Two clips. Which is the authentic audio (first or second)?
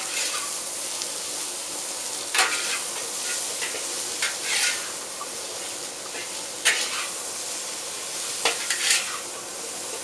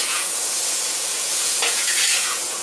first